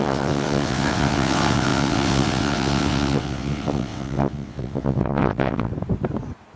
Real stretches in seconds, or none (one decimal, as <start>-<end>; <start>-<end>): 5.7-6.6